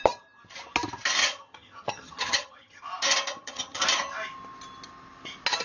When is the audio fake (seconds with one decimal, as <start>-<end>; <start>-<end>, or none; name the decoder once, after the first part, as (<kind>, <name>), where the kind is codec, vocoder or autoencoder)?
1.2-2.8 (vocoder, HiFi-GAN); 3.3-3.8